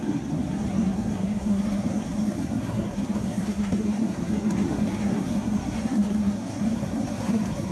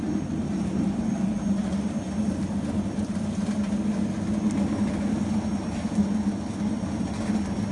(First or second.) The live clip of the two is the second